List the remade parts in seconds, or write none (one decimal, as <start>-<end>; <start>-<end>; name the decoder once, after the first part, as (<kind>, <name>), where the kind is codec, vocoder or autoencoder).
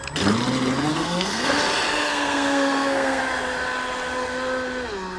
0.9-1.6 (codec, SNAC); 2.1-3.2